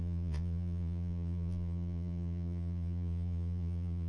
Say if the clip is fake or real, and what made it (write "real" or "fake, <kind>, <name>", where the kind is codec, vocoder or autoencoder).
fake, vocoder, Vocos